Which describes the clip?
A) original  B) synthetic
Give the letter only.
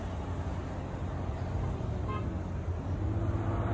A